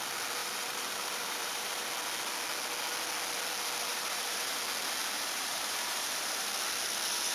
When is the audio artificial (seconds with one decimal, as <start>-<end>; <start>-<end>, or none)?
0.4-1.9; 3.9-4.6; 5.0-6.5